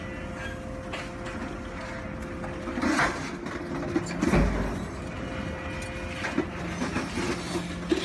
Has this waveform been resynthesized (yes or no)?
no